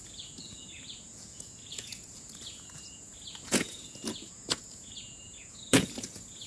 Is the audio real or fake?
fake